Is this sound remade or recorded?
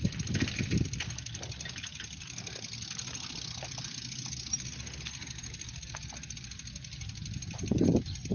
recorded